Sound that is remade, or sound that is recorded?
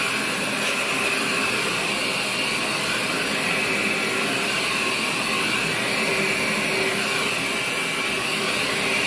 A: recorded